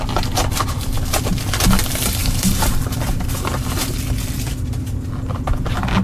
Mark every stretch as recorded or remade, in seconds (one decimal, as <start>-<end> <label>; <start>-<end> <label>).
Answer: 0.0-2.2 recorded; 2.2-4.0 remade; 4.0-6.0 recorded